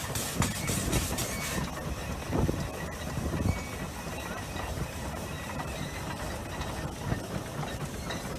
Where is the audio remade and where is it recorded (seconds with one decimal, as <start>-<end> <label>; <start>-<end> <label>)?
0.0-1.2 remade; 1.2-4.1 recorded; 4.1-6.4 remade; 6.4-7.7 recorded; 7.7-8.4 remade